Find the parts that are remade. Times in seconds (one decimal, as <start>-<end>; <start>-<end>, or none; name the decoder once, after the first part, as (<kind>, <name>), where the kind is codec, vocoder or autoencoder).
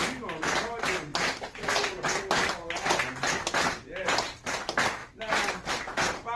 none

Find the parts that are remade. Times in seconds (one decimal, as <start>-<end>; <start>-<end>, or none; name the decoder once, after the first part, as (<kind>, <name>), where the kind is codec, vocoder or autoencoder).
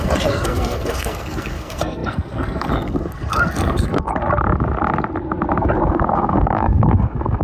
0.0-4.1 (codec, SNAC); 5.9-7.4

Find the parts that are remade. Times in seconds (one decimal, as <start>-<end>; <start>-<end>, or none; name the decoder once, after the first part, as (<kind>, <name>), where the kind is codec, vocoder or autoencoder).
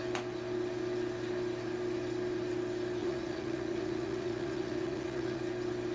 3.0-5.4 (vocoder, Vocos)